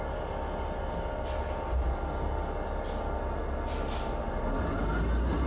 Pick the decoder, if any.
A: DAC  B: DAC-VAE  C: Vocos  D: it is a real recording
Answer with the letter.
D